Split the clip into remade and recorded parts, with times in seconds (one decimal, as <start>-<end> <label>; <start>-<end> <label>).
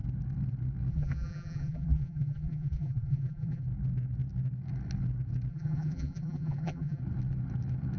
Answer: 0.0-0.9 recorded; 0.9-3.6 remade; 3.6-5.5 recorded; 5.5-7.0 remade; 7.0-8.0 recorded